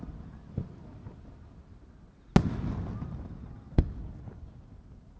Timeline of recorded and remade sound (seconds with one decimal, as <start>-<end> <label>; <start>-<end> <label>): 0.0-5.2 recorded